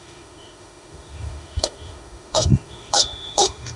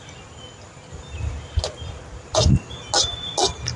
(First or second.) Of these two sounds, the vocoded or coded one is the first